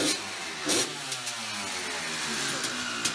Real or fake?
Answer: real